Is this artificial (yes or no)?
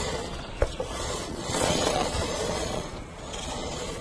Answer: yes